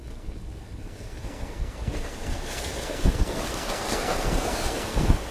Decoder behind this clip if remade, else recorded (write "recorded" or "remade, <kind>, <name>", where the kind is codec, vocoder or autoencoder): remade, codec, SNAC